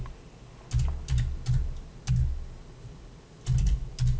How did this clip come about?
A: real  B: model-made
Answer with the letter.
A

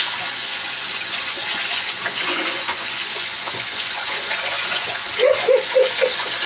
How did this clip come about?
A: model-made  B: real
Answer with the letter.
A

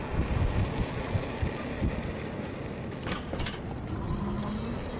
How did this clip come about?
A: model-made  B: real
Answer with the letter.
B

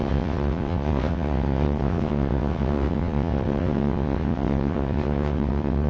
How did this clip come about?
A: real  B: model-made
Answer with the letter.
B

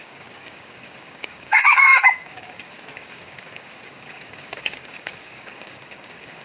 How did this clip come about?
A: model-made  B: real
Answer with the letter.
A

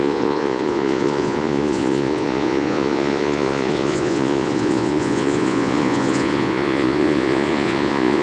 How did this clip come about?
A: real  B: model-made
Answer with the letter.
B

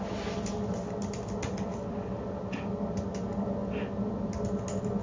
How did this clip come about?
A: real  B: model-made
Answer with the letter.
A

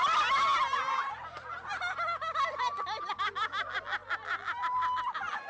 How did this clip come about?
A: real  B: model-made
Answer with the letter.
A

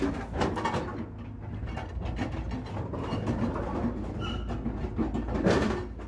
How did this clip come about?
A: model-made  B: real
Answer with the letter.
B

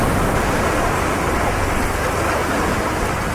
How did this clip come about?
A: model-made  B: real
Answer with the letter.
B